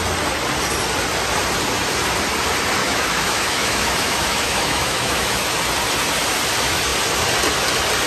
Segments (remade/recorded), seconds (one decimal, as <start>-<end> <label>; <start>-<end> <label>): 0.0-2.8 recorded; 2.8-5.5 remade; 5.5-8.1 recorded